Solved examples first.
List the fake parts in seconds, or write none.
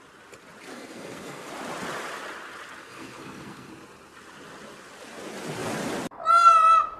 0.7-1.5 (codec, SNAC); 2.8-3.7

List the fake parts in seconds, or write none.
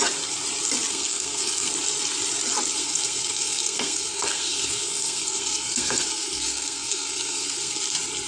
0.9-1.7 (codec, SNAC); 2.8-7.8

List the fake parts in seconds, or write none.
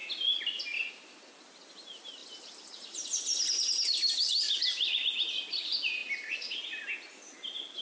none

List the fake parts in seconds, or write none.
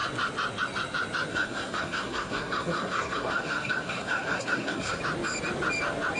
1.3-5.0 (codec, SNAC)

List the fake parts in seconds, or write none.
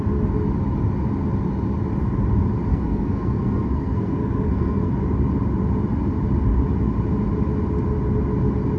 2.7-4.9 (codec, SNAC)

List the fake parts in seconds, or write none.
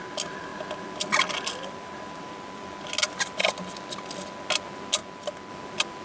none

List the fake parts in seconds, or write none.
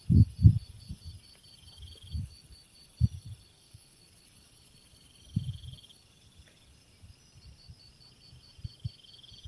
3.5-4.0 (codec, SNAC)